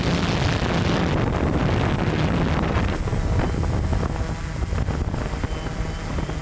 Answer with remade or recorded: recorded